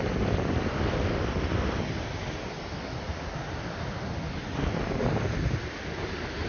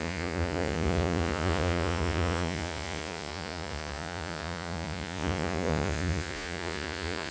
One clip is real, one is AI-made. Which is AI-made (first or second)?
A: second